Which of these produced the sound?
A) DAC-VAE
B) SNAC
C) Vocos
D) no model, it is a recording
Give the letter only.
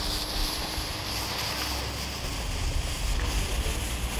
D